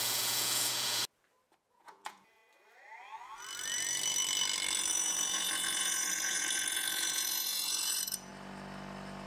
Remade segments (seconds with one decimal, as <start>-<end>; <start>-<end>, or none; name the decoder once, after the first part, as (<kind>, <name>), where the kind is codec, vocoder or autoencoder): 0.0-1.0 (vocoder, Vocos); 1.7-2.4; 4.9-8.3